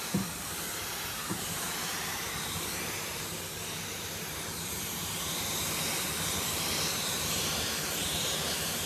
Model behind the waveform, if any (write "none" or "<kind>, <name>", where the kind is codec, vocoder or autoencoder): vocoder, BigVGAN v2